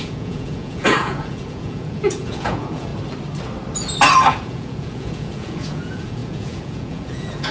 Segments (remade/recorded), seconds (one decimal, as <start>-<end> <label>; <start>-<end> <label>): 0.0-2.9 remade; 2.9-4.3 recorded; 4.3-7.5 remade